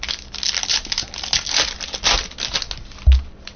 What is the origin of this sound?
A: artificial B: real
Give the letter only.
B